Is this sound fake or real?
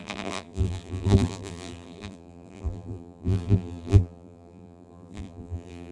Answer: fake